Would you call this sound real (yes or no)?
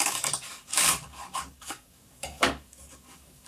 no